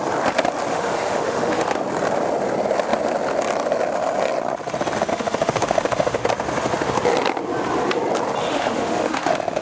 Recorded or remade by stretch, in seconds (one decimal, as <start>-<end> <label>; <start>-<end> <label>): 0.0-0.7 recorded; 0.7-1.8 remade; 1.8-5.1 recorded; 5.1-6.2 remade; 6.2-8.4 recorded; 8.4-9.6 remade